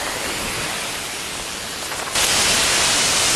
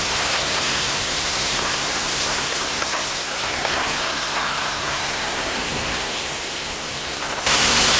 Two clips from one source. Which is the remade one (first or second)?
second